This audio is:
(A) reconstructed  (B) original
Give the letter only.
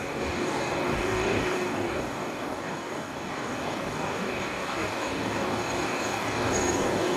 A